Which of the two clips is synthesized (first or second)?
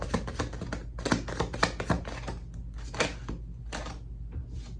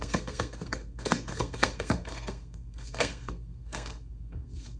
second